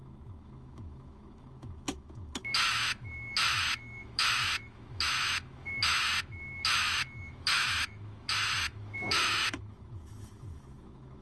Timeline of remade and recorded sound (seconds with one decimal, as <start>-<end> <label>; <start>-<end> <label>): 0.0-11.2 remade